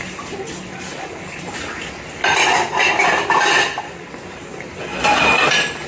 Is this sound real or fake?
real